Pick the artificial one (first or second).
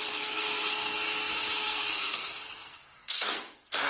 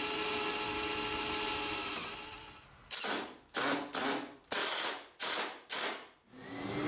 first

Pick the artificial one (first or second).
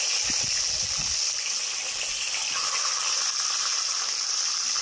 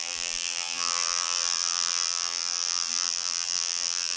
second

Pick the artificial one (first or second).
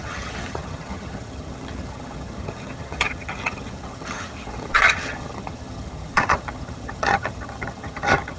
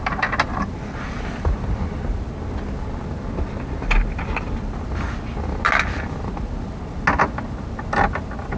first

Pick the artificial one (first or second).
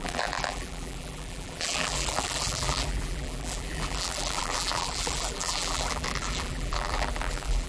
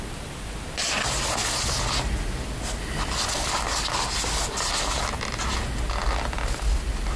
first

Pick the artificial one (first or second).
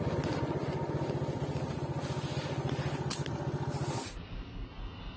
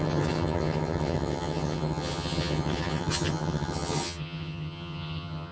second